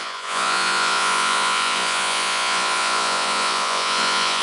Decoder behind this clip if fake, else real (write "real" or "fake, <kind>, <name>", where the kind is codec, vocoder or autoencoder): fake, vocoder, Vocos